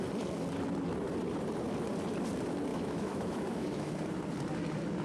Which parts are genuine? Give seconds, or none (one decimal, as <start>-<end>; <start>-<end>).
0.0-2.7; 3.9-5.0